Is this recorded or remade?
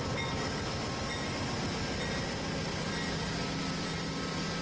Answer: recorded